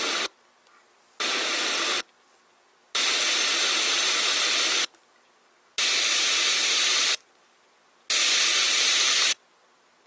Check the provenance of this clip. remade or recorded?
recorded